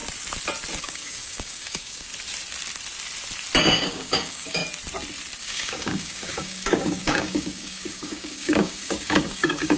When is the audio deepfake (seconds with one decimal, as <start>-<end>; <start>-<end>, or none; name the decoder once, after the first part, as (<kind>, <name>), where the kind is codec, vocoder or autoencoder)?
0.8-2.1 (codec, DAC); 3.6-4.6; 5.4-9.8